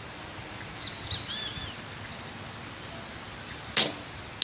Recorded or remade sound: recorded